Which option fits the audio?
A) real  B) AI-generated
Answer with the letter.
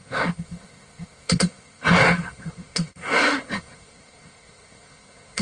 B